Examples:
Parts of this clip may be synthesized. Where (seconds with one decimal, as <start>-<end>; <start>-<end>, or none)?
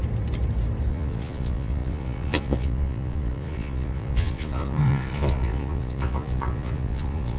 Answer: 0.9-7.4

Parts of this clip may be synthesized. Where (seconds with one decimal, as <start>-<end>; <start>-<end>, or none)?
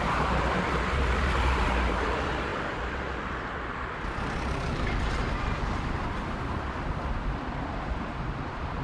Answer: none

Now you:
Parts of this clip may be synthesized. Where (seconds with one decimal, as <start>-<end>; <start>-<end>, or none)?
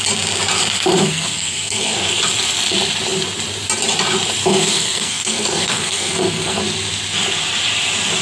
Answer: 1.0-2.2; 4.4-6.6